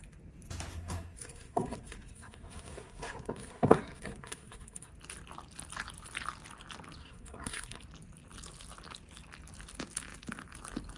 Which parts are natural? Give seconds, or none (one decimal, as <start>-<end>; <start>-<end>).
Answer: 0.0-0.7; 4.9-7.0; 7.8-11.0